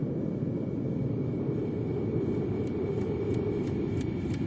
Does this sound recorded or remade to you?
recorded